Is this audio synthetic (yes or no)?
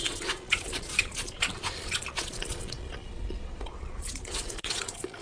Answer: yes